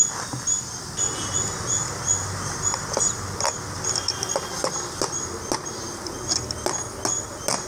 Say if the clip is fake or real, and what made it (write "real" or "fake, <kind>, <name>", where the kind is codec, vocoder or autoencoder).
real